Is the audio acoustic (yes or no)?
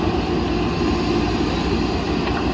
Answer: yes